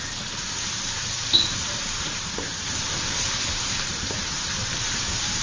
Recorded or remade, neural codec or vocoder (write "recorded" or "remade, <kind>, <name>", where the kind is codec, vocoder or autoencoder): remade, vocoder, BigVGAN v2